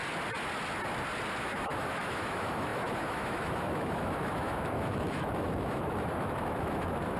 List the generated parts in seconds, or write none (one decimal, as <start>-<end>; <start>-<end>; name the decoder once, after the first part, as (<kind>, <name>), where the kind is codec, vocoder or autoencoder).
1.4-7.2 (autoencoder, DAC-VAE)